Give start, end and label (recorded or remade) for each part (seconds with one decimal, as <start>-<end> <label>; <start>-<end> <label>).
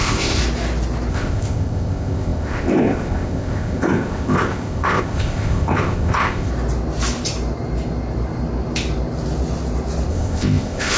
0.0-0.4 remade; 0.4-1.1 recorded; 1.1-6.5 remade; 6.5-10.1 recorded; 10.1-11.0 remade